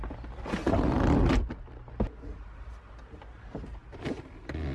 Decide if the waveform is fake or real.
real